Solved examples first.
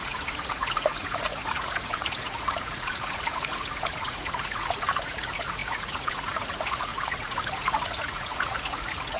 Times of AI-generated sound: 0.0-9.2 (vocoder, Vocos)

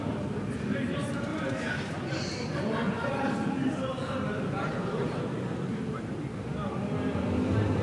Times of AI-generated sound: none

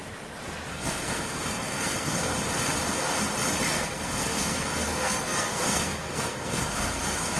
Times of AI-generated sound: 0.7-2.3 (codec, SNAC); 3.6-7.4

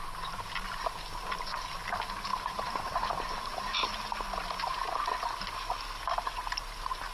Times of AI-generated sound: 2.3-3.6 (vocoder, BigVGAN v2)